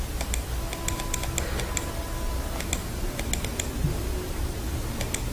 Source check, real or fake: real